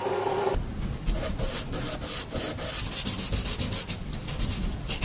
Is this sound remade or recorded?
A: recorded